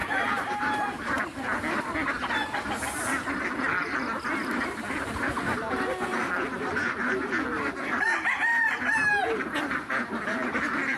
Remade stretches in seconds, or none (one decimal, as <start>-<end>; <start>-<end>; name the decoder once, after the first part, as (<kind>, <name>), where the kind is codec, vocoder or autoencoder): 0.0-0.6 (vocoder, BigVGAN v2)